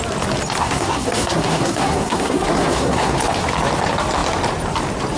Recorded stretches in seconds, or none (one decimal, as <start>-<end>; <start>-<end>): 0.0-0.6; 3.2-5.2